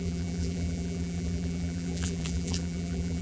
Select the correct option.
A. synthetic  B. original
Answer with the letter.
A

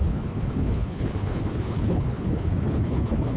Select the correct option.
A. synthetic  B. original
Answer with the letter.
A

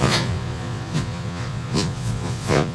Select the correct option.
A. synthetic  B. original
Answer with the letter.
A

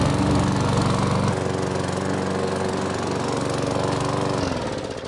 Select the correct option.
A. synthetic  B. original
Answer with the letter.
B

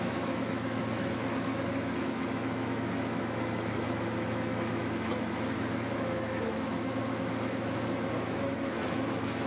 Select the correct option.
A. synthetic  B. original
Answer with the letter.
A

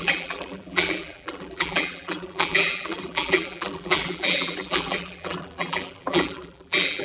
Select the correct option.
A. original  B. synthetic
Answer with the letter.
B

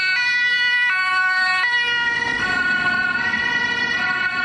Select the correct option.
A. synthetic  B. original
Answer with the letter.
B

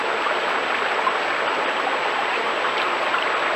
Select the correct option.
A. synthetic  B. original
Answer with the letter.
B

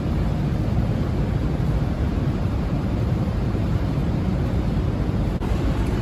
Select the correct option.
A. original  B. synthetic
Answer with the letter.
B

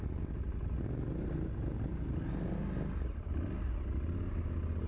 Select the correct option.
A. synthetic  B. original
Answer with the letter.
B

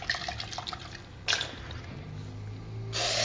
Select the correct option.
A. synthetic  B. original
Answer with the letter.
B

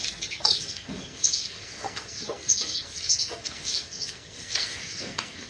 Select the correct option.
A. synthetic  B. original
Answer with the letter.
A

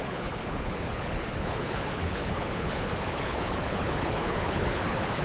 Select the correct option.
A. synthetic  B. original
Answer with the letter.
A